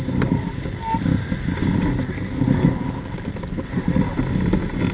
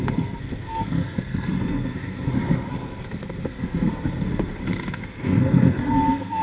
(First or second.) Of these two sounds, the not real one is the second